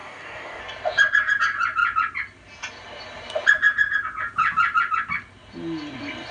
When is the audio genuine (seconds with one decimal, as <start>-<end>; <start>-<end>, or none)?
0.6-6.3